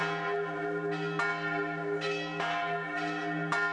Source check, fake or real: real